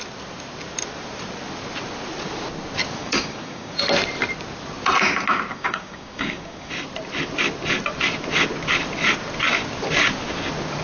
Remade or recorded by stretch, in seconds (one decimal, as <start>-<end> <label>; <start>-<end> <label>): 0.0-3.0 recorded; 3.0-3.8 remade; 3.8-5.5 recorded; 5.5-6.7 remade; 6.7-10.8 recorded